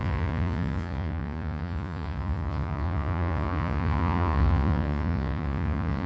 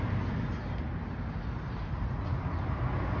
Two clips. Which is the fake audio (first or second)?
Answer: first